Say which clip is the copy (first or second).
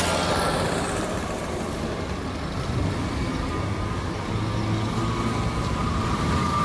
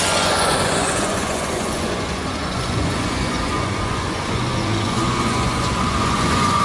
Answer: second